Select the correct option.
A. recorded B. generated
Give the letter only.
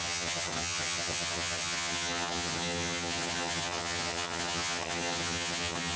B